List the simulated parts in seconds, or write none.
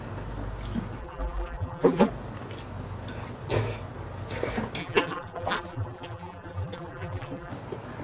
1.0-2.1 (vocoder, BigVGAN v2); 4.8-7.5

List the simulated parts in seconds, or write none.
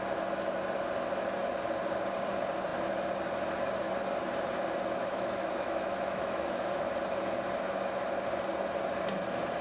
5.0-6.9 (autoencoder, DAC-VAE)